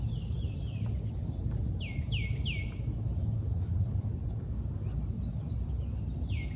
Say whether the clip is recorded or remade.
recorded